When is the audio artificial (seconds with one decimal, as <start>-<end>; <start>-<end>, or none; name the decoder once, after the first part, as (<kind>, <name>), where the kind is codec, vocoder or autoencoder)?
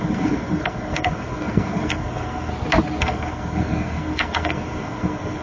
0.0-2.5 (codec, SNAC); 3.0-5.4